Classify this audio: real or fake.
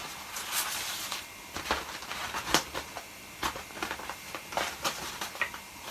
real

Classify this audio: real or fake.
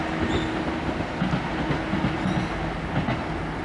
real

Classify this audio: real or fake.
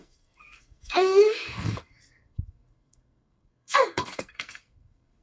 fake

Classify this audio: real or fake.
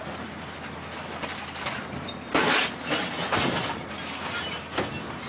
real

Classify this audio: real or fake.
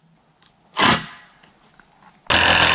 real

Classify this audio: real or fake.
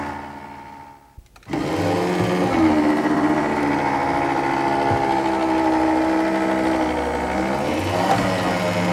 real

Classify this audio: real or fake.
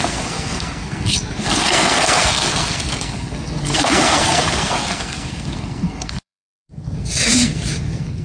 fake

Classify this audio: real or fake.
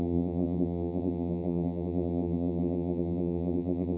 fake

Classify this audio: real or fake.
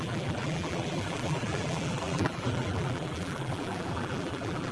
fake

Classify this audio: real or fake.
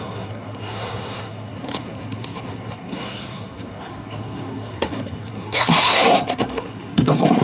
fake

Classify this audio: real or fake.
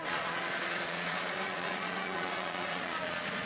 fake